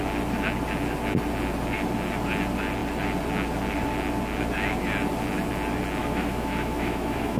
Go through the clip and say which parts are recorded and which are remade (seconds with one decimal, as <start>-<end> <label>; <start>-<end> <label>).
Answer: 0.0-6.0 recorded; 6.0-7.4 remade